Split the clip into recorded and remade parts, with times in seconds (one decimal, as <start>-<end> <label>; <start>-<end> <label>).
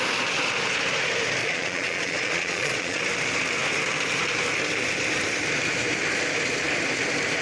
0.0-1.4 recorded; 1.4-3.0 remade; 3.0-7.4 recorded